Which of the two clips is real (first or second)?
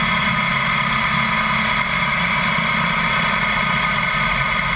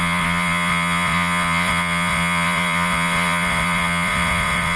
first